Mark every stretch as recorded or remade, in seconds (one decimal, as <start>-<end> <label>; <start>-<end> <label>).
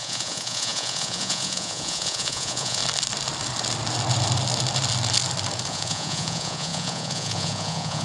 0.0-2.8 remade; 2.8-5.7 recorded; 5.7-8.0 remade